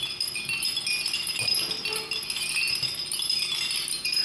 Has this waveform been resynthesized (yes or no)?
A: no